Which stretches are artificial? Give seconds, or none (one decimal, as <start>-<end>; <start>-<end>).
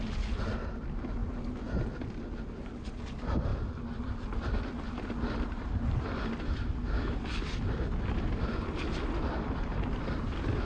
none